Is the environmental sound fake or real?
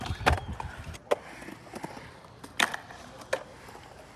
real